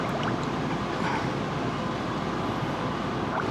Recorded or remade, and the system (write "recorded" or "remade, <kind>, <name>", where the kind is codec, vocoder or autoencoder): recorded